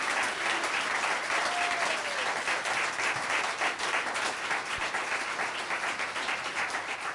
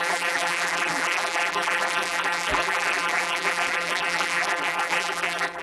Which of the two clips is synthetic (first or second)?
second